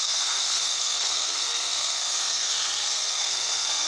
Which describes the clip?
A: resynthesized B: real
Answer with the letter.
A